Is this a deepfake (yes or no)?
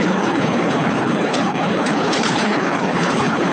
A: yes